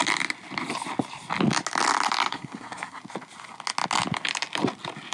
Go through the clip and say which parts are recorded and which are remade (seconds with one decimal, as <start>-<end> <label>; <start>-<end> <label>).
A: 0.0-2.3 recorded; 2.3-3.0 remade; 3.0-5.1 recorded